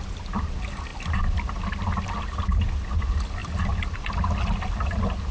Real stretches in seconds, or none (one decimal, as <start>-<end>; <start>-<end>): 0.0-5.3